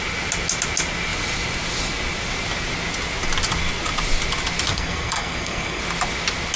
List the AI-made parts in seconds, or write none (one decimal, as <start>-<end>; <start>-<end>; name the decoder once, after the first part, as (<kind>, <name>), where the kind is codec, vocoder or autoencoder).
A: 4.7-5.8 (codec, SNAC)